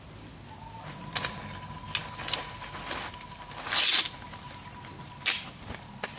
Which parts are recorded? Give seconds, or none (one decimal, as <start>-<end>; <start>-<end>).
0.0-6.2